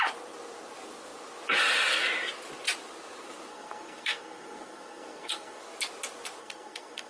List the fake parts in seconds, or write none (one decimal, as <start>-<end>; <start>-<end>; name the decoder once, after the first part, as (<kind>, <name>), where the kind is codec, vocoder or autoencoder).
3.5-5.6 (codec, SNAC); 6.4-7.1